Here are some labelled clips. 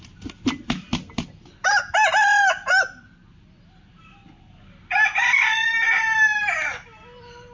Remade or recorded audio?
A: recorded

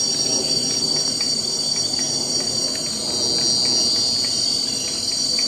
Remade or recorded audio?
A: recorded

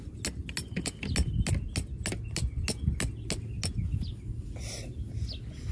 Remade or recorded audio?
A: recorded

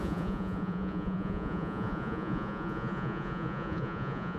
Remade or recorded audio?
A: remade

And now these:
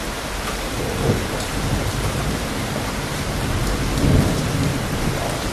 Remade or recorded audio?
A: remade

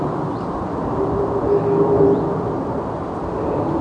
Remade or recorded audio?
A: recorded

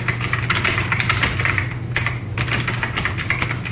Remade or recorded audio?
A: remade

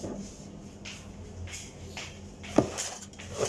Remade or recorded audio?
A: recorded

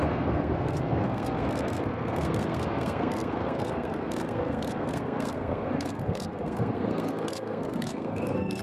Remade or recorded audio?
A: remade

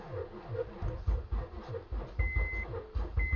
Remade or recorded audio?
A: recorded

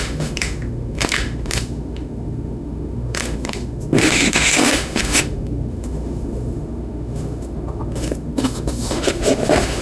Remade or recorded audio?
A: remade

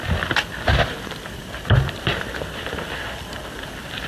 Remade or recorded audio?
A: recorded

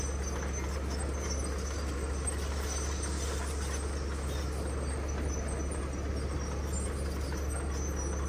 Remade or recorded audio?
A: recorded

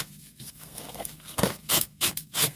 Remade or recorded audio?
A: remade